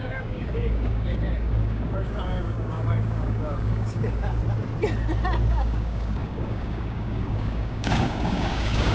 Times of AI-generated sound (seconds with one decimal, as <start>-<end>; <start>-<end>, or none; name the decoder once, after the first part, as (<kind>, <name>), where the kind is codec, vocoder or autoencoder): 0.0-4.4 (codec, DAC); 5.5-8.9